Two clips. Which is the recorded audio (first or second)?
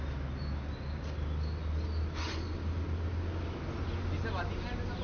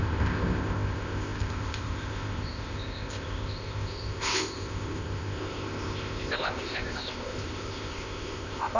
first